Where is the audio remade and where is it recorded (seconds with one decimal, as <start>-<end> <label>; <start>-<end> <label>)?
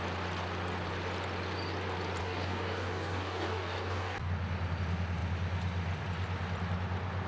0.0-2.2 recorded; 2.2-4.3 remade; 4.3-7.3 recorded